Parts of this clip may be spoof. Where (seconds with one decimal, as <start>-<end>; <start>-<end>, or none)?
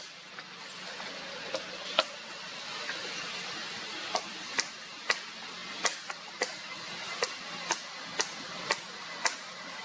none